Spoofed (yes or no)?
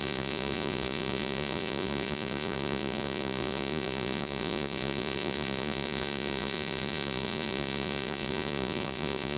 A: yes